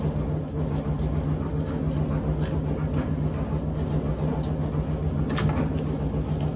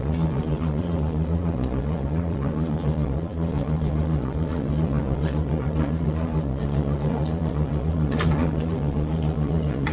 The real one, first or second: first